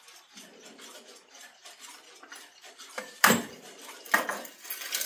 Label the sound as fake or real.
fake